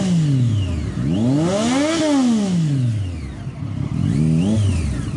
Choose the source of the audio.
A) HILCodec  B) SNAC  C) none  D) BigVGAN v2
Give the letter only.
C